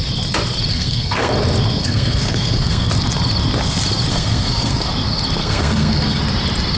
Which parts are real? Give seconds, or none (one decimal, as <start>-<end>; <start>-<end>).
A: 0.0-0.7; 1.3-1.8; 2.9-4.1; 4.9-5.4; 6.2-6.8